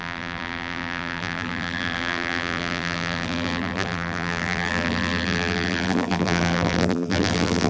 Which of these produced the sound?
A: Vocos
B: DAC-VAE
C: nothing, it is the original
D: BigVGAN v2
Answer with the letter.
D